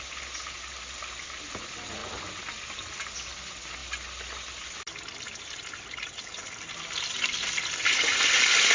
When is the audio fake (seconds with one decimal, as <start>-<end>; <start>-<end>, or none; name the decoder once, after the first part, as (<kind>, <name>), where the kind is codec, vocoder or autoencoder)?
none